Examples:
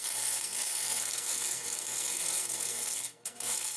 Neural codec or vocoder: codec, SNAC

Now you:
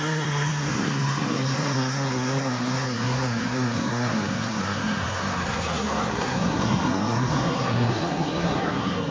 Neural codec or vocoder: codec, SNAC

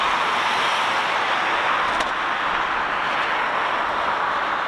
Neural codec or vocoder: none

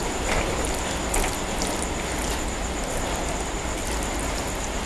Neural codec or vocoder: none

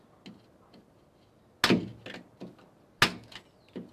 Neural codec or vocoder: none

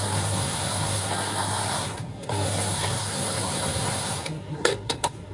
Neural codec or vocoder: codec, SNAC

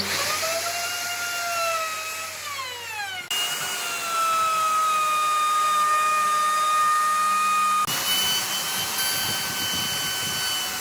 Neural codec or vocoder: none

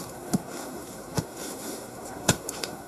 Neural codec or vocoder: codec, SNAC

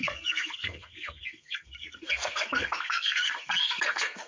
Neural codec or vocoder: codec, SNAC